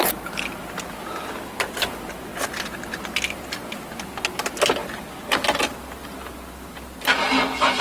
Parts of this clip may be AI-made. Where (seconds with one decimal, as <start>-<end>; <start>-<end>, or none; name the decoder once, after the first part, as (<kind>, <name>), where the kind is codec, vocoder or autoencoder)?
none

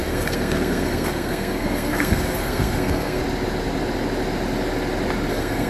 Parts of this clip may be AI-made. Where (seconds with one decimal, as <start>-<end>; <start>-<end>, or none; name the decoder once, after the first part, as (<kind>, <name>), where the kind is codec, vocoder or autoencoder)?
0.0-3.2 (codec, SNAC); 5.3-5.7

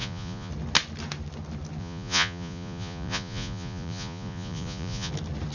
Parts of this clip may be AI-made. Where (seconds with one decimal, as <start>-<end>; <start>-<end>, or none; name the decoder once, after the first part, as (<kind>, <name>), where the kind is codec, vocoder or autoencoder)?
0.0-0.5 (vocoder, Vocos); 1.8-5.1

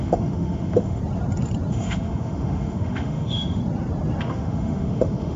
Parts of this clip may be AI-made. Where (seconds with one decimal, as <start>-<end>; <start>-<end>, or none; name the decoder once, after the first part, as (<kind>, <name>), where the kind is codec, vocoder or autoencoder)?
0.0-1.0 (autoencoder, DAC-VAE); 1.7-3.6; 4.2-5.4

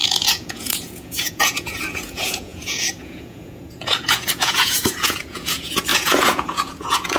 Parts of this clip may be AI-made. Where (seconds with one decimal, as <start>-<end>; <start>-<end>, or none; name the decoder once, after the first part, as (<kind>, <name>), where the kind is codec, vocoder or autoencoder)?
0.0-7.2 (vocoder, Vocos)

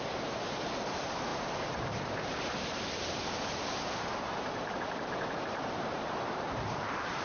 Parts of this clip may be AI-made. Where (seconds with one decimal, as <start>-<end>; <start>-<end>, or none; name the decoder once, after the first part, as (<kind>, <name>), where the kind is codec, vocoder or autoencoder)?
0.0-7.2 (vocoder, BigVGAN v2)

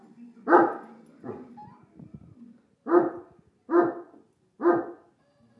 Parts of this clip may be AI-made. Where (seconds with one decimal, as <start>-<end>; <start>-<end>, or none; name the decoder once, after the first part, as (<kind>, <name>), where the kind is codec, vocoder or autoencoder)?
none

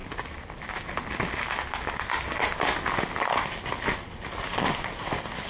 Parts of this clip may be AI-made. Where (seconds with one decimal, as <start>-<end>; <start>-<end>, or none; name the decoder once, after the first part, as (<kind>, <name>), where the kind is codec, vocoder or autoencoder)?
none